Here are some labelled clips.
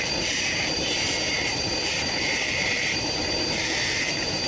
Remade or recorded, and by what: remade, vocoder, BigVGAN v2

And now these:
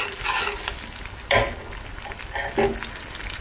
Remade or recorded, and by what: recorded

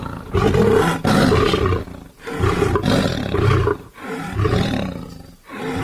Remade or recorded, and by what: recorded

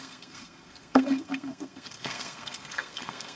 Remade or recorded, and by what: remade, codec, SNAC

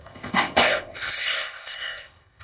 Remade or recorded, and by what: remade, codec, ZipCodec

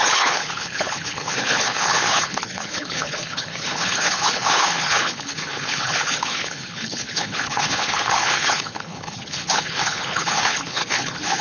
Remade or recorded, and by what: remade, codec, HILCodec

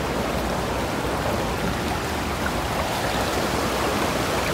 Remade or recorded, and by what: recorded